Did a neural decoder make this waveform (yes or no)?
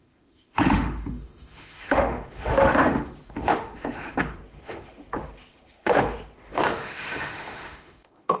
yes